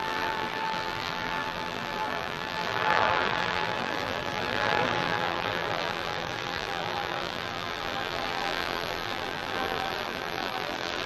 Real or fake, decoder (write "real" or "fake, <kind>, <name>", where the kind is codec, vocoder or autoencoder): fake, vocoder, BigVGAN v2